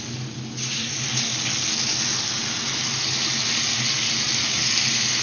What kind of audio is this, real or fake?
real